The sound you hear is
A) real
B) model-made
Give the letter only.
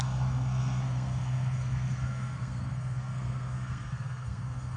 B